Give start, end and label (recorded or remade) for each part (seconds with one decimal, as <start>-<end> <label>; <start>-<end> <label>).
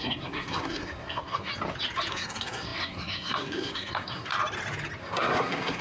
0.0-1.5 remade; 1.5-2.1 recorded; 2.1-4.3 remade; 4.3-5.0 recorded; 5.0-5.8 remade